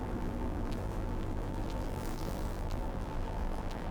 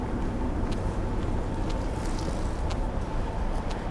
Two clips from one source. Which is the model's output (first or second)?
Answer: first